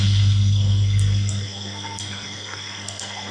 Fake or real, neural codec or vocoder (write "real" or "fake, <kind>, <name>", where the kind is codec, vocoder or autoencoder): fake, codec, SNAC